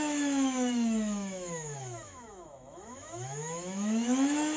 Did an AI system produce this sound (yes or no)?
yes